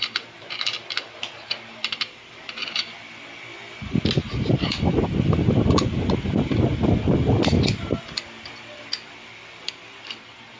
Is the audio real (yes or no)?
yes